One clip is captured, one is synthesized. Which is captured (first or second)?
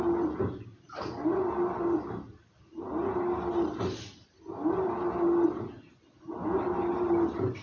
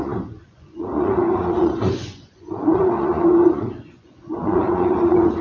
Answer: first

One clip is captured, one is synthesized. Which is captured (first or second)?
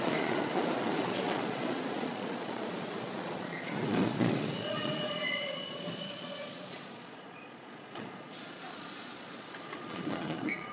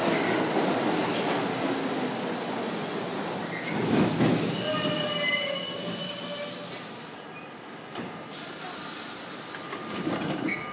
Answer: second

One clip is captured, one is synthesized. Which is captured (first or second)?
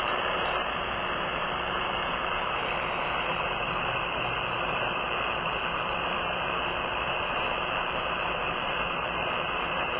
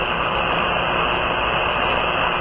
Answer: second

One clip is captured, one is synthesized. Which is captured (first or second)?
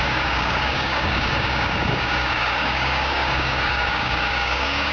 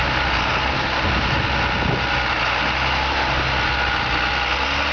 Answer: second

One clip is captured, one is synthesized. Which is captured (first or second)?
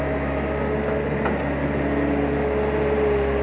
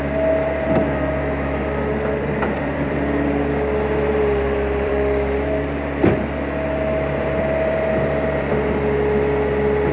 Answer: first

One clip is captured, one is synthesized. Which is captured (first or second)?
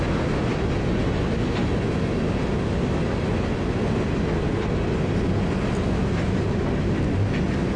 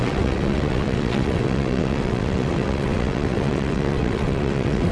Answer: first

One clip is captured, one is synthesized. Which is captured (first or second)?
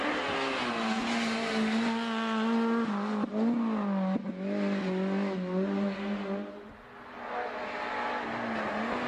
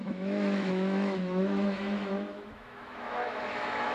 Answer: first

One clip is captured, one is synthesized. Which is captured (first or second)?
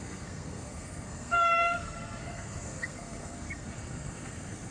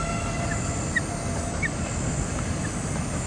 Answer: second